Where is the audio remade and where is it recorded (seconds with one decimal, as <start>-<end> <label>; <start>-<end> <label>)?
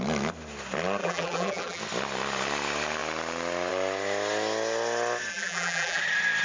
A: 0.0-1.0 recorded; 1.0-1.8 remade; 1.8-5.3 recorded; 5.3-6.0 remade; 6.0-6.4 recorded